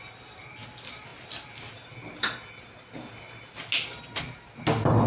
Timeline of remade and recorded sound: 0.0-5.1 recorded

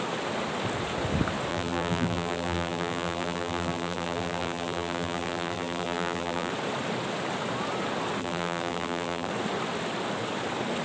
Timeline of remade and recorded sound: 0.0-1.5 recorded; 1.5-6.5 remade; 6.5-8.2 recorded; 8.2-9.3 remade; 9.3-10.8 recorded

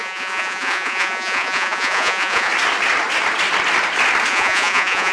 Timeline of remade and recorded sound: 0.0-2.5 remade; 2.5-4.3 recorded; 4.3-5.1 remade

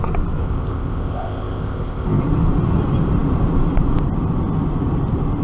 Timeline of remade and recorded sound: 0.0-0.4 recorded; 0.4-2.2 remade; 2.2-5.4 recorded

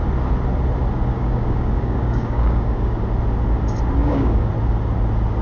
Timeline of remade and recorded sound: 0.0-1.1 recorded; 1.1-3.0 remade; 3.0-4.0 recorded; 4.0-4.5 remade; 4.5-5.4 recorded

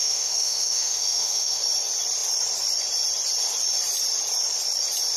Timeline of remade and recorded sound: 0.0-1.6 remade; 1.6-5.2 recorded

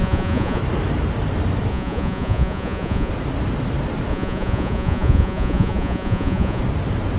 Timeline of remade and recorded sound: 0.0-0.6 remade; 0.6-1.7 recorded; 1.7-3.1 remade; 3.1-4.1 recorded; 4.1-6.6 remade; 6.6-7.2 recorded

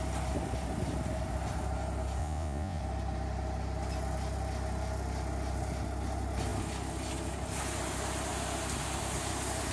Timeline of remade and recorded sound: 0.0-2.2 recorded; 2.2-2.8 remade; 2.8-9.7 recorded